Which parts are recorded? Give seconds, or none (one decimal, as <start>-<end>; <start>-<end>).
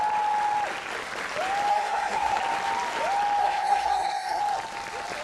0.0-1.7; 2.4-3.4; 4.4-5.2